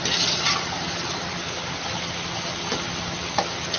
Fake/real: real